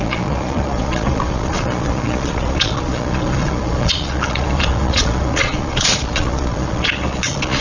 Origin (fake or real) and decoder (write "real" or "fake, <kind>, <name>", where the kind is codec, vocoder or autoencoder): fake, vocoder, Vocos